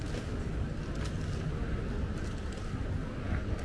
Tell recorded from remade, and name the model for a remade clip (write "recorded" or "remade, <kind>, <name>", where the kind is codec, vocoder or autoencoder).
recorded